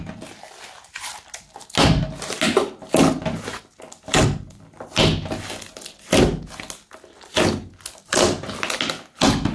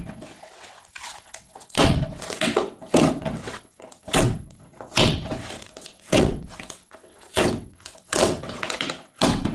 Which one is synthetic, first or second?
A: second